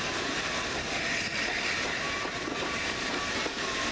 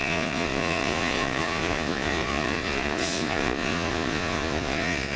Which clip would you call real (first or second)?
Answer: first